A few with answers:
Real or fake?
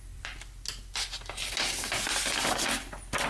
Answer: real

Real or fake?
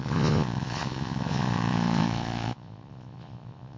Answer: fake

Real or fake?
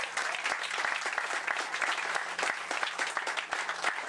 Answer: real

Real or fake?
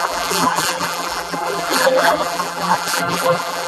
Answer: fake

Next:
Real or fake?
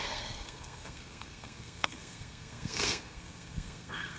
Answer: fake